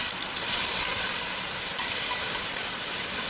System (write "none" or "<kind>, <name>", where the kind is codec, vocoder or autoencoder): vocoder, BigVGAN v2